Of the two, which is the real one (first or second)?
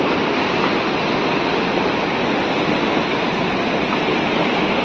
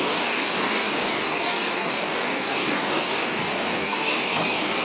first